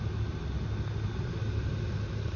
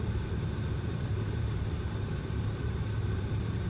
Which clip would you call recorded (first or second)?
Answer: first